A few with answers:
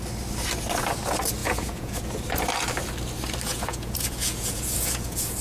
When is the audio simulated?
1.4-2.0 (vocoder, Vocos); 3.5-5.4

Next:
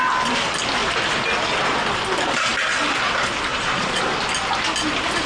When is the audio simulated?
3.5-4.0 (vocoder, Vocos)

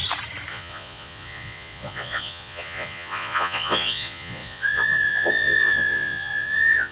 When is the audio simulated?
0.5-6.9 (vocoder, Vocos)

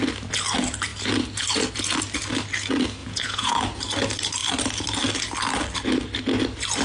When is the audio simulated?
3.0-3.6 (vocoder, Vocos)